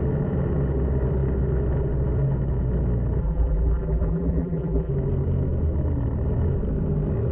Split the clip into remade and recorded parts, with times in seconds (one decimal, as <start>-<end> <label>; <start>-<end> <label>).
0.0-3.2 recorded; 3.2-4.9 remade; 4.9-7.3 recorded